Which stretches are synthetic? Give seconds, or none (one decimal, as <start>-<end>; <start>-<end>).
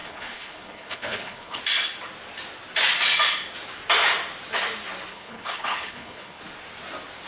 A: 0.0-1.6; 5.1-6.4